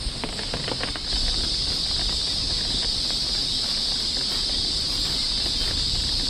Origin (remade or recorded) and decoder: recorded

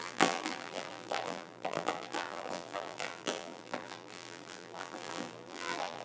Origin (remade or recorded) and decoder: remade, vocoder, BigVGAN v2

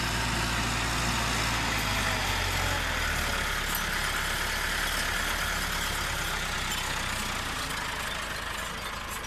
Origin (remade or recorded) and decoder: recorded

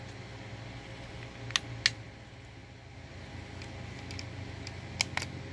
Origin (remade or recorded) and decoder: recorded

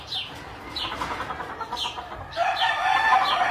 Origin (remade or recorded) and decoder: remade, vocoder, BigVGAN v2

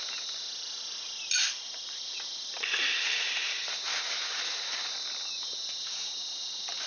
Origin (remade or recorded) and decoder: recorded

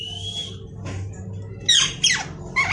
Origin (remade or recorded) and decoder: recorded